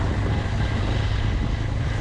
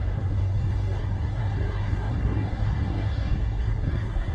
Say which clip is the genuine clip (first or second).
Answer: first